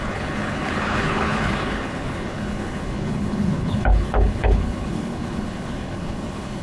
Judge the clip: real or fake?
fake